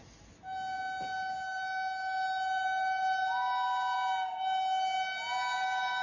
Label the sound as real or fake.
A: real